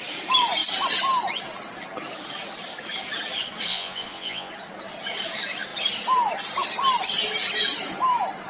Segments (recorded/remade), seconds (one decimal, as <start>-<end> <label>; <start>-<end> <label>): 0.0-3.7 recorded; 3.7-4.5 remade; 4.5-8.5 recorded